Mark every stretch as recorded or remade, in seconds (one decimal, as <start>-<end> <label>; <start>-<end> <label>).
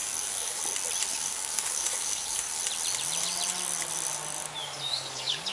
0.0-0.6 remade; 0.6-1.1 recorded; 1.1-2.6 remade; 2.6-4.6 recorded; 4.6-5.5 remade